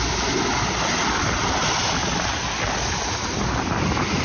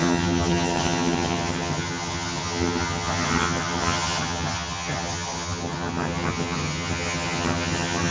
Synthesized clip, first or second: second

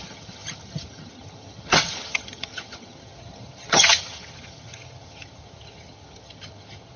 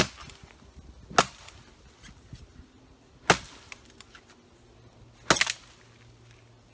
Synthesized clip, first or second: first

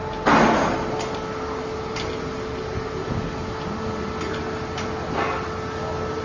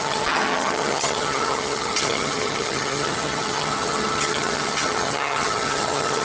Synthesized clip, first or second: second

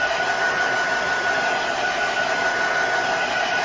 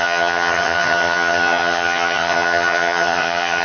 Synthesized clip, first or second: second